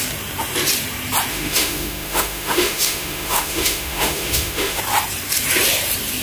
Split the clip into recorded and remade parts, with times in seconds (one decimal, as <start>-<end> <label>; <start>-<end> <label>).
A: 0.0-1.3 recorded; 1.3-4.8 remade; 4.8-6.2 recorded